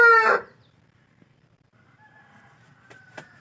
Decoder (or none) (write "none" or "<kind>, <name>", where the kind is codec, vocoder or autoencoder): vocoder, BigVGAN v2